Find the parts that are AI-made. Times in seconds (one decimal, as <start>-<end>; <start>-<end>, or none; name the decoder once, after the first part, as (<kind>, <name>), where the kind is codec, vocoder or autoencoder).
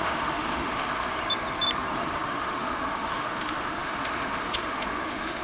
0.0-1.1 (autoencoder, DAC-VAE); 2.0-5.4